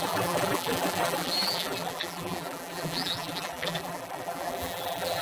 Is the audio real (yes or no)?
no